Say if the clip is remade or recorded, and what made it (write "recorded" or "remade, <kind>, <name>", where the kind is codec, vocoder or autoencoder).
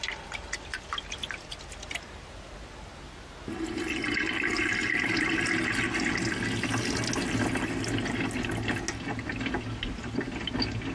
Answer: recorded